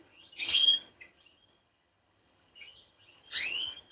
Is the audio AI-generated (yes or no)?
yes